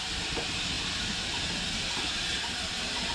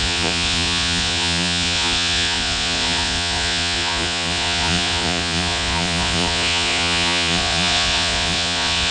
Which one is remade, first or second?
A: second